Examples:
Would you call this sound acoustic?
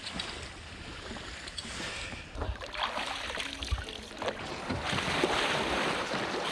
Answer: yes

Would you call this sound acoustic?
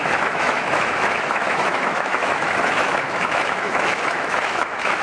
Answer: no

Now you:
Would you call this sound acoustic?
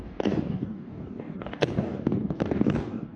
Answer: no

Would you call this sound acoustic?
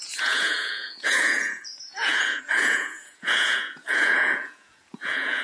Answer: no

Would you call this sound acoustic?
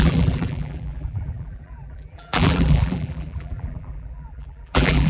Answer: no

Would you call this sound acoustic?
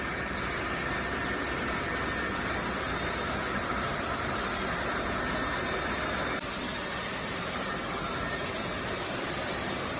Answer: yes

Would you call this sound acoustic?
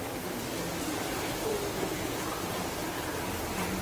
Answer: yes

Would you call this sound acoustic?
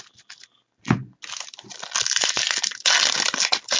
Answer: yes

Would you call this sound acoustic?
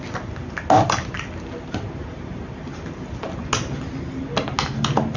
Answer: yes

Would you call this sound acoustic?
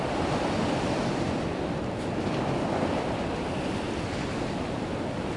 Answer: yes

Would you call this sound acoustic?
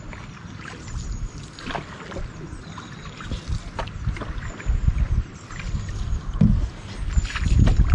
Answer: yes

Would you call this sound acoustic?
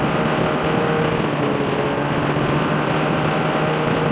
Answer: yes